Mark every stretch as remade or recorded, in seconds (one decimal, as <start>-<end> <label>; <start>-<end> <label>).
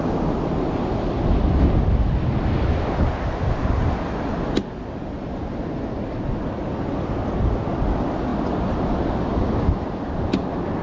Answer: 0.0-10.8 recorded